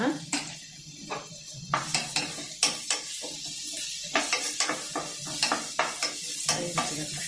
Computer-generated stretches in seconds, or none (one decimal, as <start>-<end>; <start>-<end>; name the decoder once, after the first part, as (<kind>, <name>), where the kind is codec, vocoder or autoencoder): 0.0-2.0 (vocoder, BigVGAN v2); 3.6-5.1; 5.8-7.3